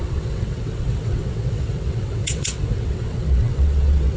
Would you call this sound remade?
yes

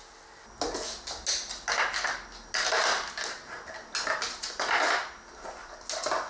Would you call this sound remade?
no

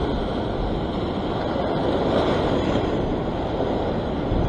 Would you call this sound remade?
yes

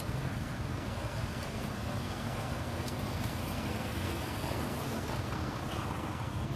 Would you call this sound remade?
yes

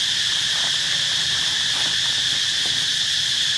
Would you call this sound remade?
no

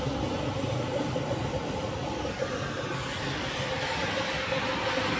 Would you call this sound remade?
no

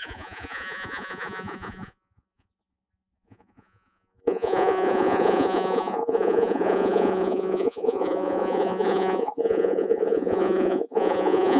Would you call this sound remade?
yes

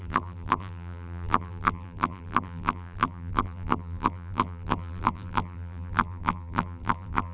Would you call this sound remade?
yes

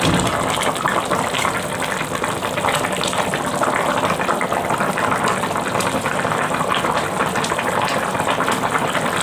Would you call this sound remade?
no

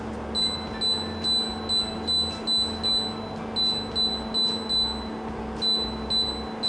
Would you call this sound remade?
no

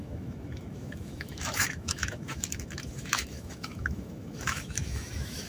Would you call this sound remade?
yes